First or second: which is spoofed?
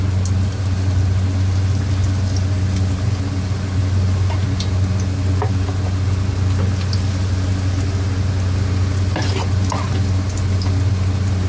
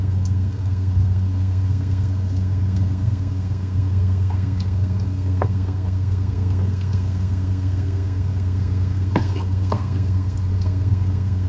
second